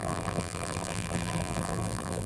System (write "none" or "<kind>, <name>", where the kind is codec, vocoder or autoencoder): vocoder, BigVGAN v2